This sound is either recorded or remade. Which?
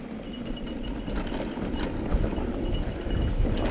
recorded